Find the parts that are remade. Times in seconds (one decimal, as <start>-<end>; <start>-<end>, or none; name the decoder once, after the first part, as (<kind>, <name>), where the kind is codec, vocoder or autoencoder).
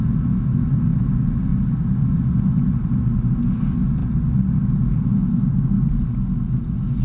none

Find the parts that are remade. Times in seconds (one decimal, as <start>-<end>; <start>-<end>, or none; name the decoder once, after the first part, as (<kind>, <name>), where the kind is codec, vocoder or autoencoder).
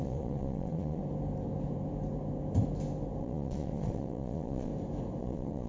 0.0-1.0 (vocoder, Vocos); 3.2-4.7; 5.2-5.7